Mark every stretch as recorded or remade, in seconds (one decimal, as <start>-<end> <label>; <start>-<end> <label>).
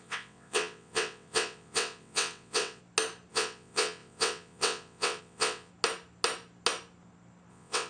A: 0.0-2.8 remade; 2.8-3.3 recorded; 3.3-5.7 remade; 5.7-7.5 recorded; 7.5-7.9 remade